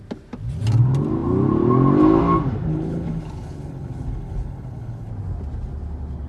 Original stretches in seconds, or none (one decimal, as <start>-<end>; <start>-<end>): 0.0-2.7; 5.1-6.3